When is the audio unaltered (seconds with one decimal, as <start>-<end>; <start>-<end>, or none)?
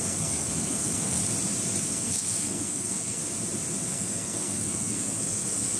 1.2-1.8; 3.2-3.9